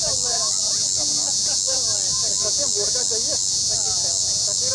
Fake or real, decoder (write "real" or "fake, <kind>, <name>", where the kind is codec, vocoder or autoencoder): real